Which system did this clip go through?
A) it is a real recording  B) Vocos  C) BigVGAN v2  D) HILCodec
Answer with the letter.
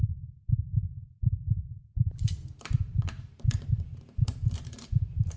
C